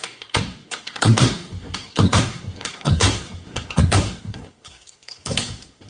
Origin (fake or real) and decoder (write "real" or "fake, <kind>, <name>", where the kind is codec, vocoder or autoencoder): fake, codec, SNAC